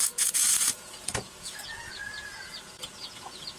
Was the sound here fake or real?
fake